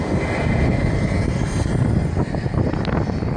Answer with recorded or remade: recorded